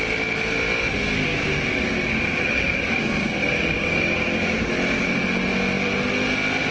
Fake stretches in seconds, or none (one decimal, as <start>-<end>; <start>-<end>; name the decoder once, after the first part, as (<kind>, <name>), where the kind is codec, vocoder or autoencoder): 1.3-4.7 (codec, DAC)